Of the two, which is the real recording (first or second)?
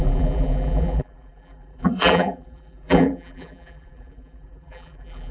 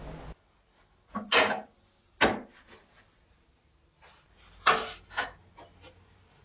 second